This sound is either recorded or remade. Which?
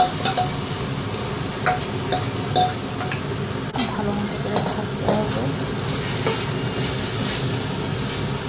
recorded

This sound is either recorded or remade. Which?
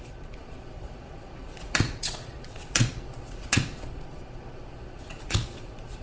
remade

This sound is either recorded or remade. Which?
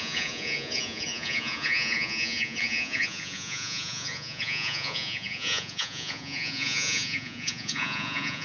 remade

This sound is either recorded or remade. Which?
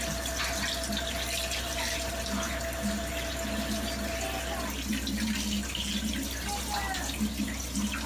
recorded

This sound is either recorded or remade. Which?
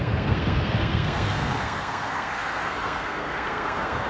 remade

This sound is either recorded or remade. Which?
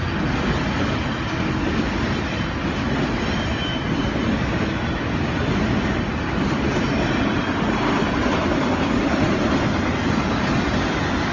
recorded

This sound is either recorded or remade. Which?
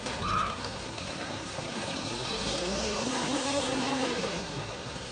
remade